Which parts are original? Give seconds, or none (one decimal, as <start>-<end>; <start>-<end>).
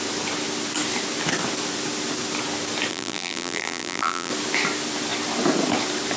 0.0-2.9; 4.3-6.2